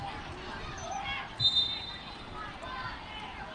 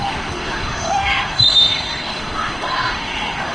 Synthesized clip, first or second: second